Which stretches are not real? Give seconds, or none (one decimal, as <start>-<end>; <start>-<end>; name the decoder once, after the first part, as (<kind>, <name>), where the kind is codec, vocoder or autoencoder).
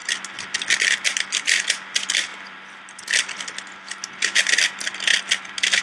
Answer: none